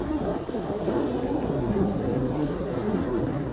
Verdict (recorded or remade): remade